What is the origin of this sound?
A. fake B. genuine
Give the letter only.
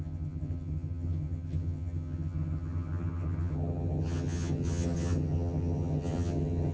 A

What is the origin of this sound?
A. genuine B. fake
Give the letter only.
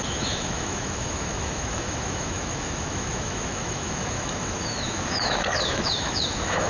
B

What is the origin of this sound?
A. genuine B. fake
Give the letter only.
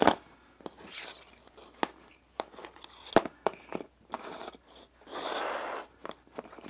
A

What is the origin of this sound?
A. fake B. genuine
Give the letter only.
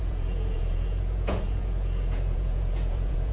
A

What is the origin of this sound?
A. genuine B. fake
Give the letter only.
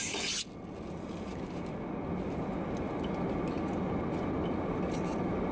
A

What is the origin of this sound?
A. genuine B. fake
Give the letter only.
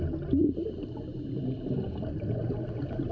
A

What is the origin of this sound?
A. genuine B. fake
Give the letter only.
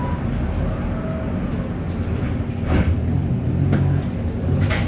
A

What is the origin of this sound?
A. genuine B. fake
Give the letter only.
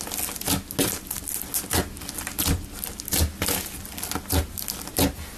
A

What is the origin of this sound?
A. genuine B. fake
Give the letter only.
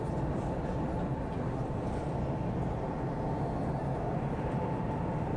A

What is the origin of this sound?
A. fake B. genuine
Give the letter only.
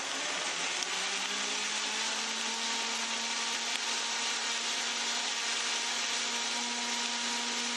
B